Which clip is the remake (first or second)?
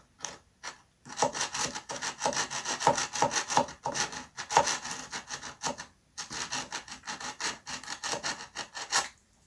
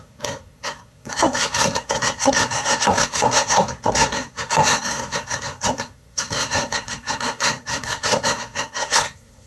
second